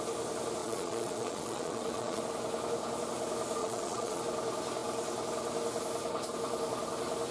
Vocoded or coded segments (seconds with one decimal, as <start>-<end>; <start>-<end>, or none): 0.6-2.2; 3.6-4.2